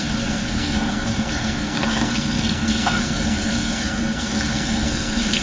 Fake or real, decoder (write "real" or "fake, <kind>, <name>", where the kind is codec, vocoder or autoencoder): fake, codec, SNAC